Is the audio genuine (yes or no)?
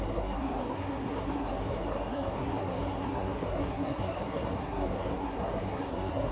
no